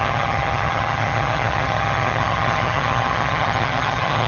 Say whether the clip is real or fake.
fake